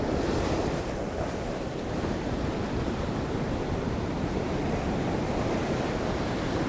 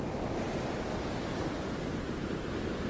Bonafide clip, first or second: second